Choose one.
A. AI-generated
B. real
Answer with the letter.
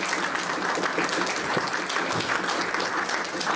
B